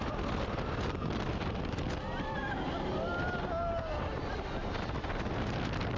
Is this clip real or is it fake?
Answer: real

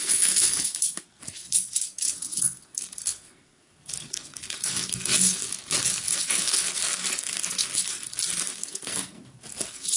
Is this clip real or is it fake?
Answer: fake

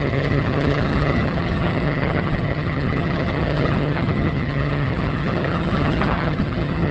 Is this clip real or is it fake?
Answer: fake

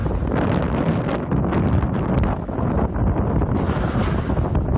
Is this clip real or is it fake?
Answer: real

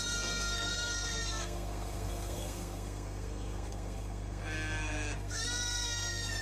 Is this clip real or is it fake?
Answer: fake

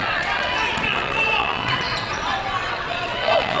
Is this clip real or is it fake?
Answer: fake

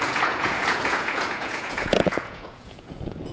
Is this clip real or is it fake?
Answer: fake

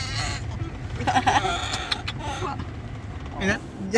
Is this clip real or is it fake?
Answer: real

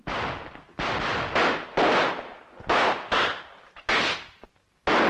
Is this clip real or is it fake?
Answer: real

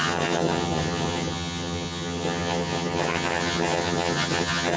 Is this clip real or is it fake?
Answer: fake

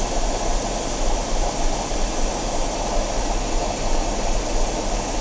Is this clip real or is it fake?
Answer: real